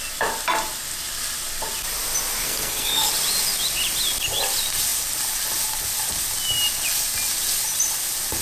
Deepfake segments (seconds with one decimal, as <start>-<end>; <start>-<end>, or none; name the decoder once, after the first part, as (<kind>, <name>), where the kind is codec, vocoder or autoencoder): 2.4-3.1 (codec, SNAC)